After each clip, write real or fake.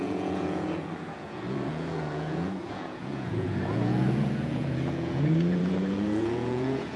fake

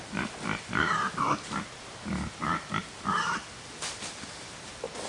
real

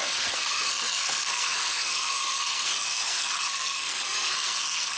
fake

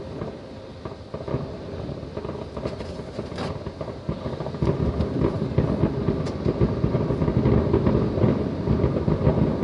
real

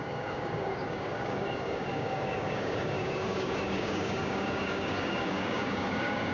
fake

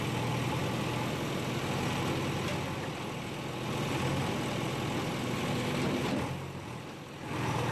real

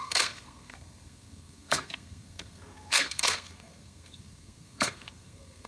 fake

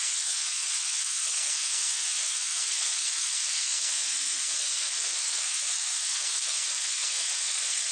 fake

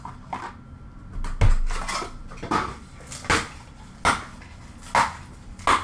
real